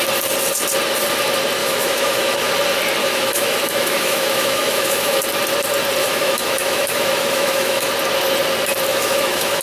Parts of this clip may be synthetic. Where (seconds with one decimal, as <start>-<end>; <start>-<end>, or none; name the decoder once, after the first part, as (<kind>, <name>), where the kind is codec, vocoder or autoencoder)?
1.6-2.5 (autoencoder, DAC-VAE); 3.0-5.2; 6.0-7.9; 8.9-9.6